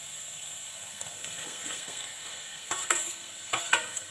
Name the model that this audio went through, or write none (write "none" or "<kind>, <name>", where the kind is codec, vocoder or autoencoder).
codec, SNAC